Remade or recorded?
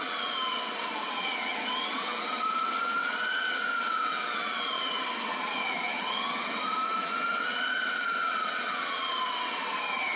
remade